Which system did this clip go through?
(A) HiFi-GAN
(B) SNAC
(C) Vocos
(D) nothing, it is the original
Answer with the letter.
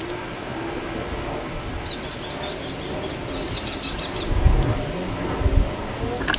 D